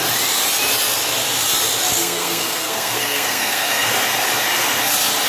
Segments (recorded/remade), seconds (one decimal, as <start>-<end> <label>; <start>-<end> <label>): 0.0-2.0 recorded; 2.0-3.9 remade; 3.9-5.3 recorded